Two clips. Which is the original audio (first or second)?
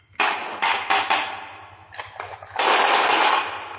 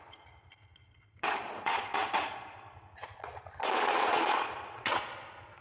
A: first